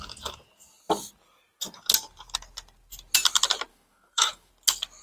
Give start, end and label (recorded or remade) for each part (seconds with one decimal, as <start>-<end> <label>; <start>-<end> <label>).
0.0-3.7 recorded; 3.7-4.5 remade; 4.5-5.0 recorded

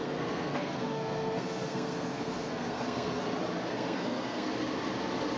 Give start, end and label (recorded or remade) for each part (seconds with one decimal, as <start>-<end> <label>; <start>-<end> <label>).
0.0-3.2 remade; 3.2-3.7 recorded; 3.7-4.5 remade; 4.5-5.4 recorded

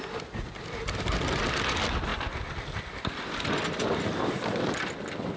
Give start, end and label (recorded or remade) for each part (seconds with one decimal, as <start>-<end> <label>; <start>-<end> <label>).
0.0-5.4 recorded

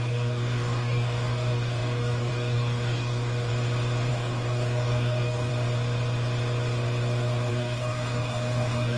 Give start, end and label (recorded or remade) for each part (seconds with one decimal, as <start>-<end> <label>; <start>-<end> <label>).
0.0-3.5 remade; 3.5-4.1 recorded; 4.1-5.5 remade; 5.5-7.5 recorded; 7.5-9.0 remade

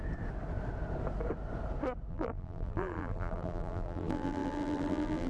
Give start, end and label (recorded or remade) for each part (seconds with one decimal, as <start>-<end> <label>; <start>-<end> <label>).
0.0-2.1 recorded; 2.1-5.3 remade

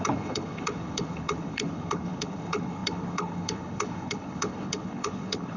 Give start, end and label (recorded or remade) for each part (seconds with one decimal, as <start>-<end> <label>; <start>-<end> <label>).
0.0-5.6 remade

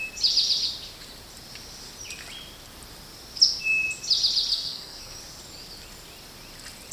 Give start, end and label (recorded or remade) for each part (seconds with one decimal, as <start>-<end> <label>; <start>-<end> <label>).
0.0-4.5 recorded; 4.5-5.2 remade; 5.2-6.9 recorded